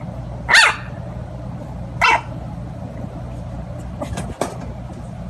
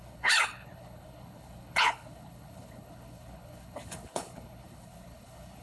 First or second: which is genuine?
first